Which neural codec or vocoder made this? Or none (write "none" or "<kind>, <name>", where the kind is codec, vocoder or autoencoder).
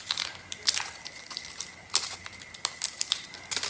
none